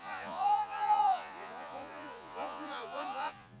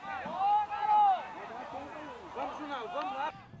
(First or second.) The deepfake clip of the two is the first